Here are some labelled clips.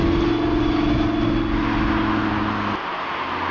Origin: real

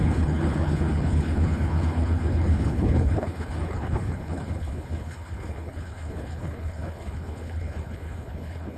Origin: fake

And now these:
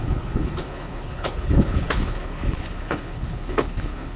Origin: fake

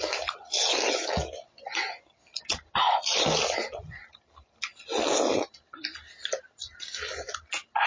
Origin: real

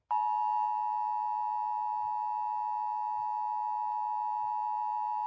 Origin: real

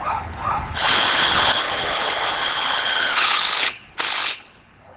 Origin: fake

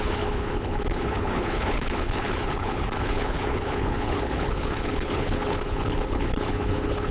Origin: fake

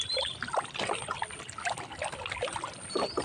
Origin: real